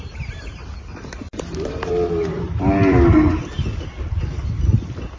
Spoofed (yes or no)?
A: yes